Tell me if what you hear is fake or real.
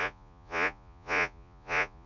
fake